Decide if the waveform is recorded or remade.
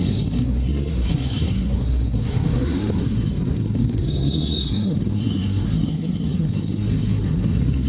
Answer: remade